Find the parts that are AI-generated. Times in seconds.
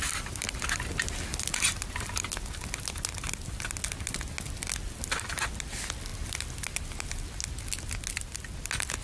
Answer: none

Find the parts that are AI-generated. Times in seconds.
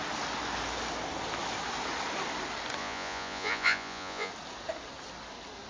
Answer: 2.8-4.3 (vocoder, Vocos)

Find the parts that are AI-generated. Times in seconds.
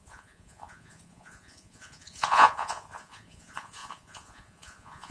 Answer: 0.0-5.1 (vocoder, Vocos)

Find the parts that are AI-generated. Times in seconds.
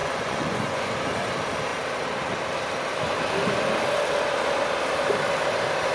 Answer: 0.0-0.9 (vocoder, Vocos)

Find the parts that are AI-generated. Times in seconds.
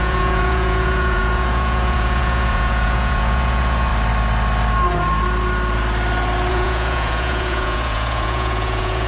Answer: 0.0-3.9 (vocoder, Vocos); 6.5-9.1